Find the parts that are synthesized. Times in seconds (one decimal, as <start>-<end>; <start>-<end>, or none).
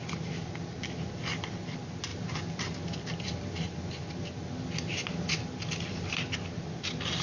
none